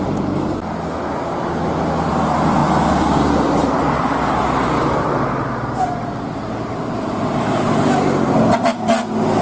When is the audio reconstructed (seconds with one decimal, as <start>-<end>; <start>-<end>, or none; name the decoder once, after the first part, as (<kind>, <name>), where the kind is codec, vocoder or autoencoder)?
6.7-7.4 (vocoder, BigVGAN v2)